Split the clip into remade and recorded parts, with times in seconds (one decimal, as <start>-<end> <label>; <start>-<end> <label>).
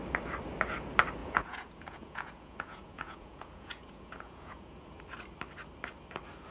0.0-1.2 recorded; 1.2-5.0 remade; 5.0-6.5 recorded